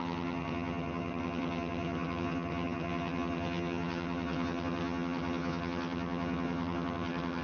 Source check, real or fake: fake